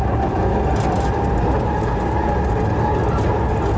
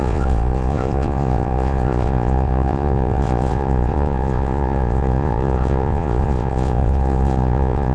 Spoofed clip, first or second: second